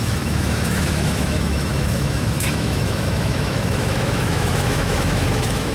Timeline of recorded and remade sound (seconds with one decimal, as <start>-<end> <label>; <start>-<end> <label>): 0.0-5.7 remade